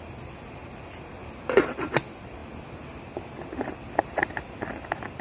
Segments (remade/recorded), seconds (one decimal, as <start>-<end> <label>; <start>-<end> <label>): 0.0-5.2 recorded